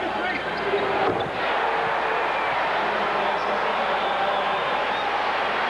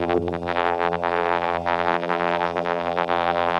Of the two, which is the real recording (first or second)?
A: first